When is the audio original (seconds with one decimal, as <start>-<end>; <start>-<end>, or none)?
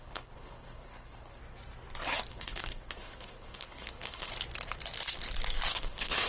1.4-2.3; 4.3-5.7